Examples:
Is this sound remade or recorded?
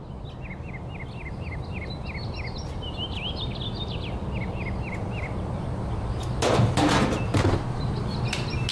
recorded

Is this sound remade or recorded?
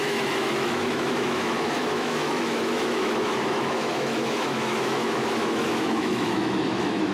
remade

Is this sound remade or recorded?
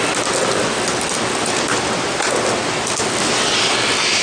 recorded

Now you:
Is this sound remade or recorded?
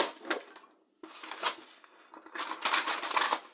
recorded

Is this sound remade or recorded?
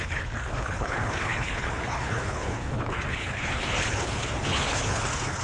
remade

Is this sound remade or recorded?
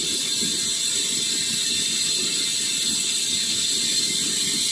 recorded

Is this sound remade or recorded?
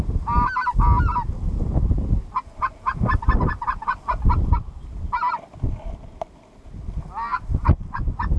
recorded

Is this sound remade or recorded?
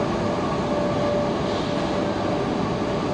recorded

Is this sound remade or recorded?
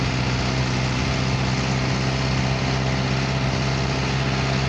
recorded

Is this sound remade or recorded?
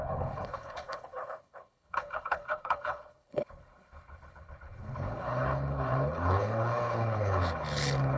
remade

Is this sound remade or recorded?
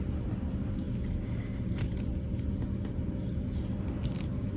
recorded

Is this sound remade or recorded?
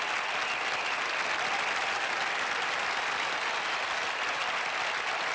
recorded